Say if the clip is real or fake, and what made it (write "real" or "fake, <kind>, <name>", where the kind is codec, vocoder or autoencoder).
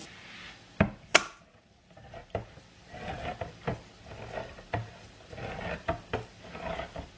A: real